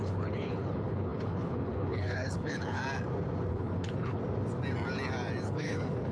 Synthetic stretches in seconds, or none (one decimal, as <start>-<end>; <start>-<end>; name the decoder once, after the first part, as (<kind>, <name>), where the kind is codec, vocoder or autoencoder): 0.0-2.8 (codec, HILCodec); 3.5-4.2; 5.4-6.1